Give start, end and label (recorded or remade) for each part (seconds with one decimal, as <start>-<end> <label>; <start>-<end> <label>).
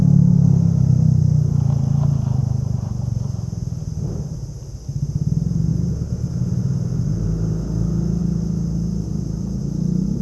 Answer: 0.0-10.2 recorded